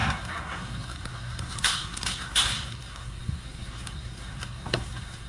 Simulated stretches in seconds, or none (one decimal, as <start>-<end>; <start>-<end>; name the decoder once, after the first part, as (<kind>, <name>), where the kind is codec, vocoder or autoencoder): 0.0-5.3 (codec, SNAC)